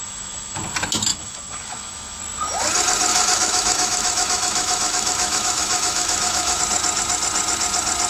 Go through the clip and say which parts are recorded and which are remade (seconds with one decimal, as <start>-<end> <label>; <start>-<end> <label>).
0.0-0.6 remade; 0.6-1.1 recorded; 1.1-2.2 remade; 2.2-3.1 recorded; 3.1-6.6 remade; 6.6-8.1 recorded

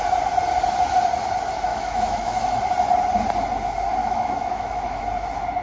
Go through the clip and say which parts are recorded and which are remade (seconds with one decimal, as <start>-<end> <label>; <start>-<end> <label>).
0.0-1.7 recorded; 1.7-2.6 remade; 2.6-4.0 recorded; 4.0-5.0 remade; 5.0-5.6 recorded

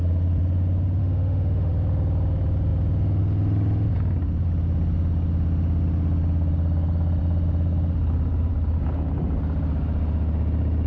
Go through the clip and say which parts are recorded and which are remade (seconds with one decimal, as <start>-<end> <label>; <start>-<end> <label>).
0.0-1.0 recorded; 1.0-1.7 remade; 1.7-10.9 recorded

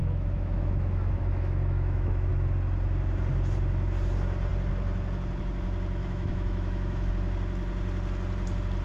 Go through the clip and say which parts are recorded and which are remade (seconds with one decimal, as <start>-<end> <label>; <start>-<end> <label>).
0.0-2.3 remade; 2.3-6.0 recorded; 6.0-7.1 remade; 7.1-8.8 recorded

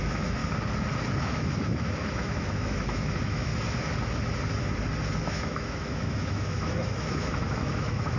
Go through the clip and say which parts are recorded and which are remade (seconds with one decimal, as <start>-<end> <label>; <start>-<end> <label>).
0.0-0.4 remade; 0.4-1.2 recorded; 1.2-3.5 remade; 3.5-5.2 recorded; 5.2-8.2 remade